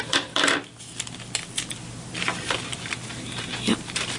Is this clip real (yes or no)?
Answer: yes